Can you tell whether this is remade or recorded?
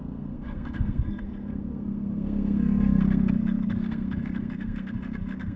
remade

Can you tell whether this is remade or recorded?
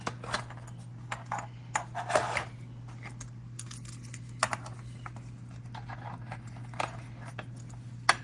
recorded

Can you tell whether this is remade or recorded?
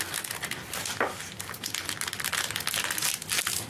recorded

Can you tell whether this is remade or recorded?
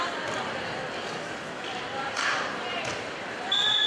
remade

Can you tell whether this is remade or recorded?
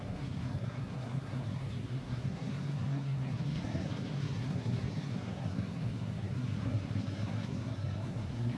remade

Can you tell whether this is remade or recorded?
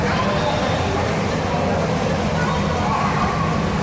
remade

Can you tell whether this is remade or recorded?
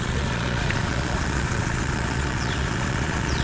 remade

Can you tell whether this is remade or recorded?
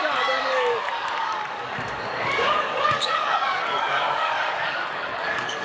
remade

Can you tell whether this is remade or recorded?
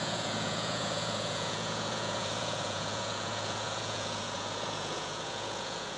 remade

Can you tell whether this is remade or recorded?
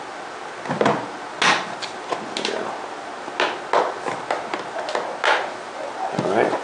recorded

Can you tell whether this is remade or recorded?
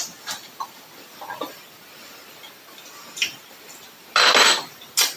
recorded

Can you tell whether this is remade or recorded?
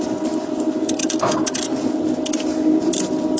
recorded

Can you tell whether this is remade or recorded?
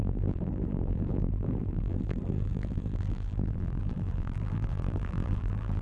remade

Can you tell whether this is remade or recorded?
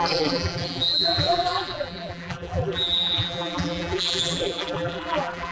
remade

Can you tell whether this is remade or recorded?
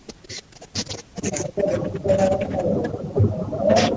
recorded